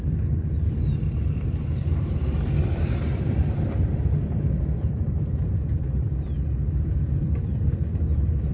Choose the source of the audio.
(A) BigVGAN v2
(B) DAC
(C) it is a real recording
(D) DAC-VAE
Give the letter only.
A